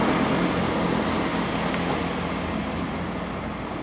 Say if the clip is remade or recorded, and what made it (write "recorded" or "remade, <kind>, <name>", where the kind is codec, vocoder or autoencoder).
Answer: recorded